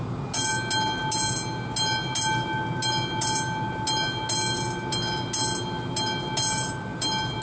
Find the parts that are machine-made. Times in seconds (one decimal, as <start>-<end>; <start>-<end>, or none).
none